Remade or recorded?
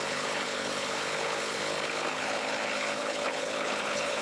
remade